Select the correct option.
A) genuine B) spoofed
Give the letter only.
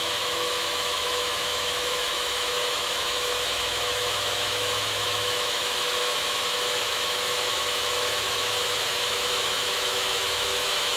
B